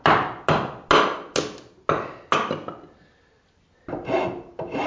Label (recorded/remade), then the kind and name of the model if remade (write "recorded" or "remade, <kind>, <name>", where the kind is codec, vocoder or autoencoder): recorded